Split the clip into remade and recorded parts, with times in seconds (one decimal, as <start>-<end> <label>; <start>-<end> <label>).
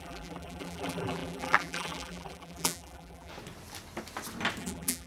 0.0-3.3 remade; 3.3-4.6 recorded; 4.6-5.1 remade